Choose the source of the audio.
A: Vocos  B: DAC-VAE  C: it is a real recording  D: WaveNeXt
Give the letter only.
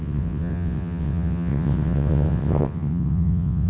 D